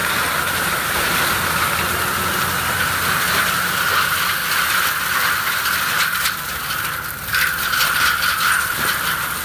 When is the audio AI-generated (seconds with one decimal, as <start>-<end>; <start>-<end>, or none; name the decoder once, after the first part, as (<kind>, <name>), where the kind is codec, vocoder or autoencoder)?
0.0-1.1 (vocoder, BigVGAN v2)